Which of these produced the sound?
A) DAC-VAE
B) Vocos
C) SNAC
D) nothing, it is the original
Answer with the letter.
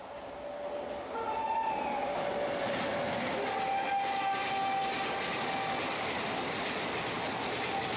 D